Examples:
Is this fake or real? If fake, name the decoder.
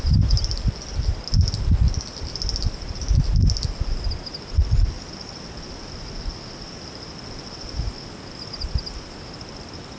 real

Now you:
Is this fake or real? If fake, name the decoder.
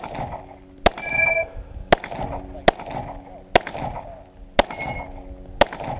real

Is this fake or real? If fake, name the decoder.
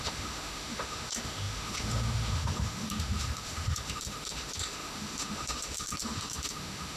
fake, autoencoder, DAC-VAE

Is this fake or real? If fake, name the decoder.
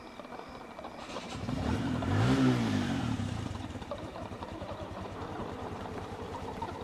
fake, vocoder, BigVGAN v2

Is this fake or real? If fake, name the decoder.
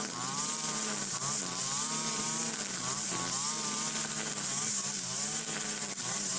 real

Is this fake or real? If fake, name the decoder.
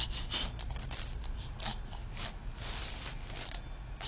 real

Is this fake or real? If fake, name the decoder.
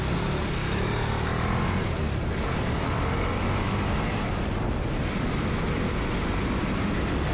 real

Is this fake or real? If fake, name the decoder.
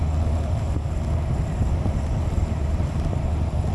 real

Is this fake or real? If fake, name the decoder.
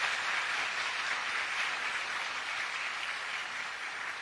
real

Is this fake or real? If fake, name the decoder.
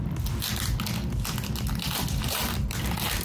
real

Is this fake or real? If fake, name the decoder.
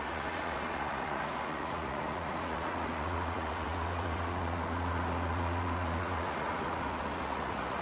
fake, vocoder, Vocos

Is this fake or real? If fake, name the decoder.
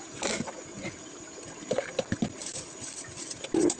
real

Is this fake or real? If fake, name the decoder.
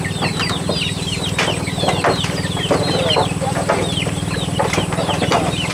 real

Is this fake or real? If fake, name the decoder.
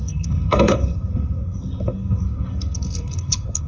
fake, codec, SNAC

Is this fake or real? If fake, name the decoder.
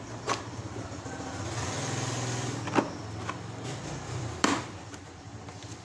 fake, vocoder, BigVGAN v2